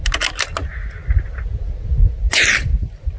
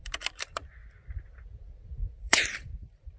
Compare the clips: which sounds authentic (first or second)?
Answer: first